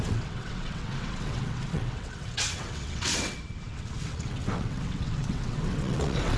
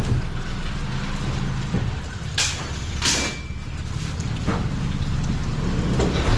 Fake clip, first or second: first